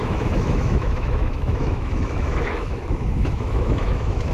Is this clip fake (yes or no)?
yes